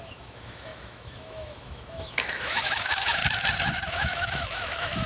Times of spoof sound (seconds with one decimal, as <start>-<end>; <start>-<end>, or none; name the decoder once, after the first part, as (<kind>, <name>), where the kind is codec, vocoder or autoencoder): 0.0-3.2 (autoencoder, DAC-VAE); 3.9-5.1